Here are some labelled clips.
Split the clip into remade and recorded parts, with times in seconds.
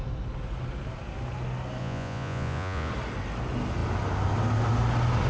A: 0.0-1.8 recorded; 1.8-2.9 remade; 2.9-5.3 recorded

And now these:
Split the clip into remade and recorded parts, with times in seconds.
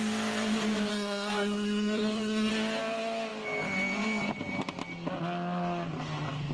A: 0.0-0.9 recorded; 0.9-2.5 remade; 2.5-6.5 recorded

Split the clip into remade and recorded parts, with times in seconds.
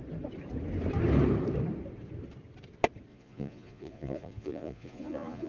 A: 0.0-3.1 recorded; 3.1-5.5 remade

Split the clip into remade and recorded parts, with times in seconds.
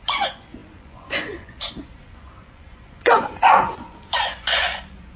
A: 0.0-5.2 remade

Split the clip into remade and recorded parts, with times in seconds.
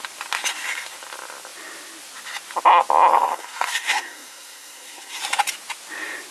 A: 0.0-3.1 recorded; 3.1-5.2 remade; 5.2-6.3 recorded